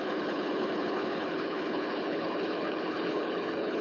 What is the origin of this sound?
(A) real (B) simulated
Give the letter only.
B